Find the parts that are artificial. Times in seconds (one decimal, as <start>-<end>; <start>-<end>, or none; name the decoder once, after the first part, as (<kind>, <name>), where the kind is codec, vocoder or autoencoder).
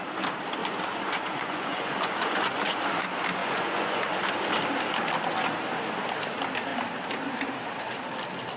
0.6-2.8 (vocoder, Vocos); 3.4-4.2